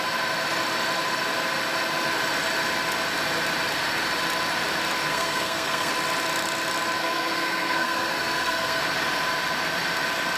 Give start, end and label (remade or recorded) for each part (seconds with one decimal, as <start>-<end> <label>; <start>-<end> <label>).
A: 0.0-5.1 recorded; 5.1-5.9 remade; 5.9-7.0 recorded; 7.0-8.8 remade; 8.8-10.4 recorded